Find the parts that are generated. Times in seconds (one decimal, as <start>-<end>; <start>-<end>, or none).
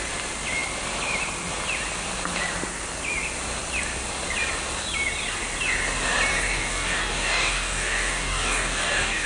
6.3-9.3